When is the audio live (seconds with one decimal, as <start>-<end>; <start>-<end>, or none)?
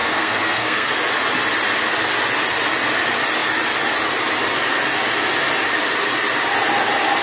0.9-7.2